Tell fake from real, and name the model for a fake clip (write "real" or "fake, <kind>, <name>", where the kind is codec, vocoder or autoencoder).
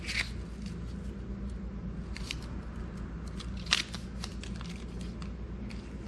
real